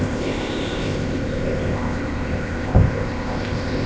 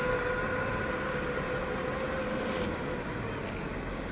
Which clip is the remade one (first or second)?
first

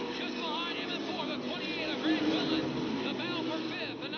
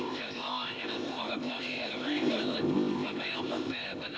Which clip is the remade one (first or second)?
second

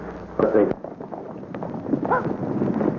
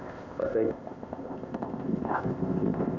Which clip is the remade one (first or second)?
second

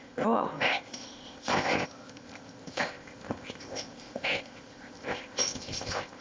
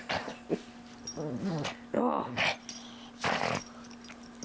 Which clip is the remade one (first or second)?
first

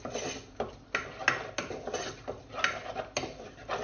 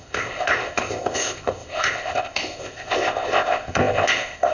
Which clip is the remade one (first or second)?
second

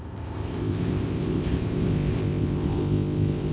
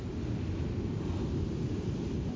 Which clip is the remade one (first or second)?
first